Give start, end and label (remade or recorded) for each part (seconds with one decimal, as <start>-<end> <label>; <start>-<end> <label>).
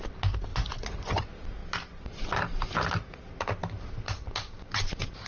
0.0-0.5 recorded; 0.5-1.2 remade; 1.2-5.3 recorded